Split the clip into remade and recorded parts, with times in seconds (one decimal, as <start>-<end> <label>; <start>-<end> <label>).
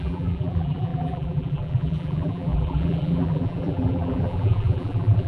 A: 0.0-5.3 remade